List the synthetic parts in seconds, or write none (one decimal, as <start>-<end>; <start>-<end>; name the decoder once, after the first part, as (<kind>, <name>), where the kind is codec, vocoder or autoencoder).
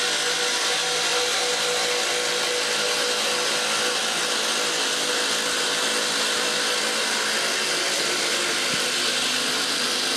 none